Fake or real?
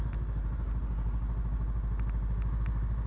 real